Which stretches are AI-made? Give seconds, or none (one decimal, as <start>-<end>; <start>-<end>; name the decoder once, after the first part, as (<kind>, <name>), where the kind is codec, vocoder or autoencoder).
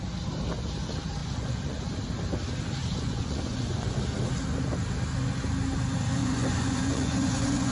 1.2-1.8 (vocoder, Vocos); 2.8-4.0; 6.2-7.7